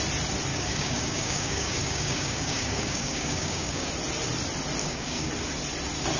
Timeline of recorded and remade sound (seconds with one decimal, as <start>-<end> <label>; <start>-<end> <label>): 0.0-0.5 recorded; 0.5-3.9 remade; 3.9-4.8 recorded; 4.8-5.3 remade; 5.3-6.2 recorded